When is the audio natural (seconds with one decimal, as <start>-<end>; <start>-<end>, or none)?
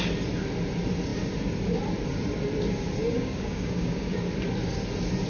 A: 0.0-3.0; 4.3-5.3